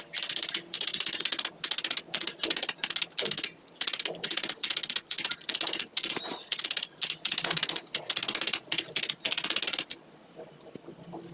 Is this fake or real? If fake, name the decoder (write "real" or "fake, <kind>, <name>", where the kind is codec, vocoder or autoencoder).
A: real